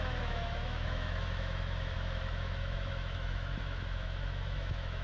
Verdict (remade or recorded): remade